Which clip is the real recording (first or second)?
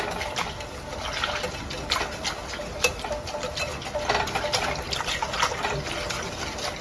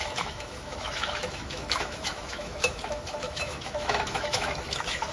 first